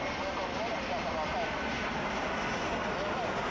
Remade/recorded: recorded